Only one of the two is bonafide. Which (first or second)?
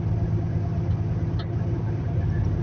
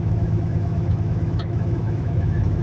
first